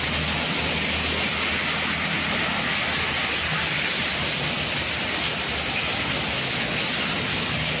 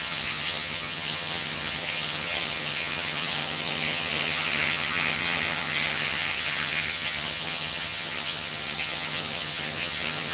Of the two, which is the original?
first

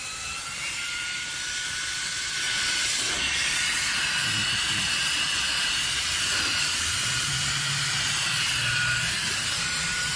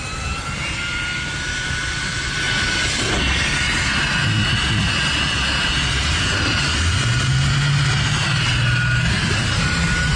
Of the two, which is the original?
second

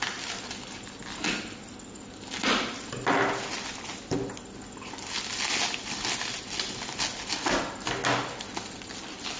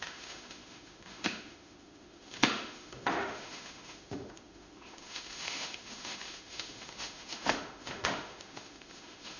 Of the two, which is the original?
first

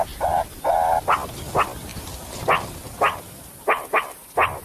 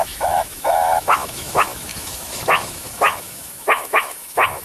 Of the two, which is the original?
first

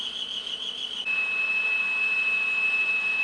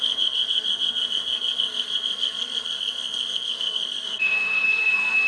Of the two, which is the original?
first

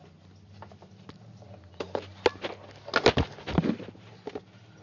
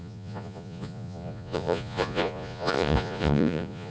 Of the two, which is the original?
first